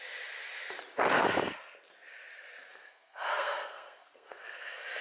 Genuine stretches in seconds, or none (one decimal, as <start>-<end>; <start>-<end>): 0.0-2.7